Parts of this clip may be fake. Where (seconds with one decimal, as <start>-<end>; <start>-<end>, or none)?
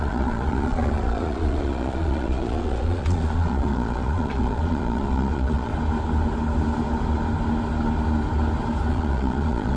0.0-5.7; 8.9-9.8